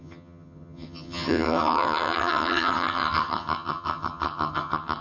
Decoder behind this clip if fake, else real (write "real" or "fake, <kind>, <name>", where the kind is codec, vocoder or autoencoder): fake, vocoder, HiFi-GAN